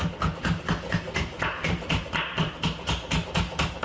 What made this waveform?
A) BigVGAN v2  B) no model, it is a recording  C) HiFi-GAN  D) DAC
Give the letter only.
B